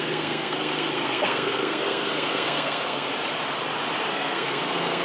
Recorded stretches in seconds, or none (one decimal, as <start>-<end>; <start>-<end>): 3.1-4.1